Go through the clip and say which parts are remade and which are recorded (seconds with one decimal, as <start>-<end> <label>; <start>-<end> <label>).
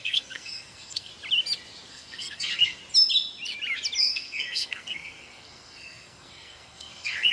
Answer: 0.0-1.1 remade; 1.1-1.9 recorded; 1.9-2.8 remade; 2.8-4.0 recorded; 4.0-7.3 remade